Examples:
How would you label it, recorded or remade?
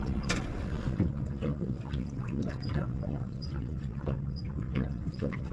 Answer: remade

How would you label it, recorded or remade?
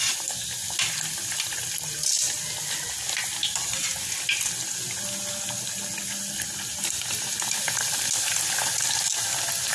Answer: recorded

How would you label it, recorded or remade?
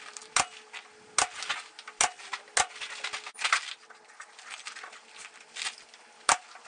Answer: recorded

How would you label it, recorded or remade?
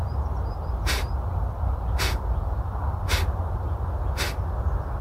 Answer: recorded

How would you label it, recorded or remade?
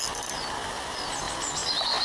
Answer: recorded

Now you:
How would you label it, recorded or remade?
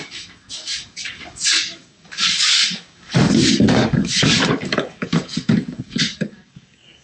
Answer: remade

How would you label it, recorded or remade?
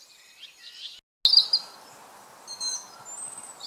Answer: recorded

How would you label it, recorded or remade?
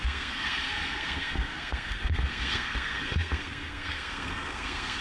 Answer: remade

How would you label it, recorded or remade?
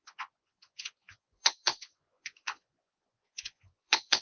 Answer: remade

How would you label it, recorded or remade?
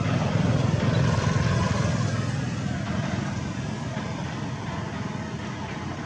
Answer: recorded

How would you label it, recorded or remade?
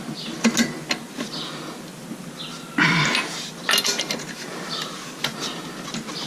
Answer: recorded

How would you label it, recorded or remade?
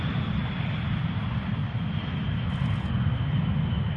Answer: recorded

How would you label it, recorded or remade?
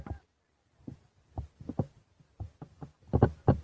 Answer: recorded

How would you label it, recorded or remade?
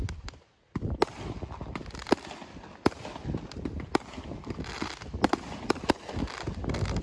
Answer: recorded